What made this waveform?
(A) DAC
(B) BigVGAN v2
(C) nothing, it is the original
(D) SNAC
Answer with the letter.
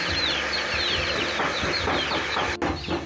C